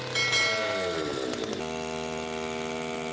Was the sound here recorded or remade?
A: recorded